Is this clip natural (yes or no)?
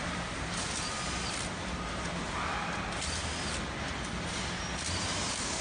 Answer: yes